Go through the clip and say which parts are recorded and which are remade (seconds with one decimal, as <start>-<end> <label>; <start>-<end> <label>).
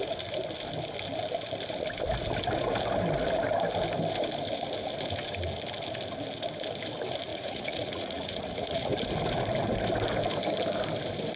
0.0-7.3 recorded; 7.3-8.9 remade; 8.9-11.4 recorded